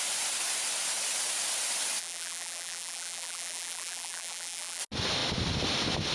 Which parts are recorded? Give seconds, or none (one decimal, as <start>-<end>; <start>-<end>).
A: 0.0-2.0; 4.8-6.1